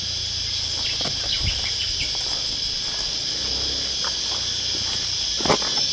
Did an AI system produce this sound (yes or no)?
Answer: no